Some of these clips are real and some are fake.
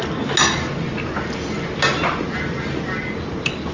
real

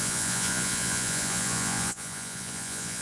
fake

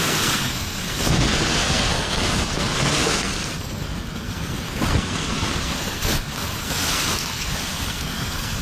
fake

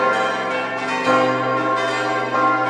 real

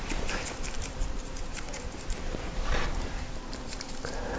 fake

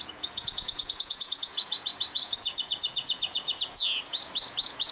fake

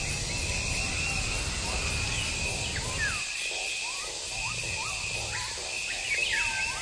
real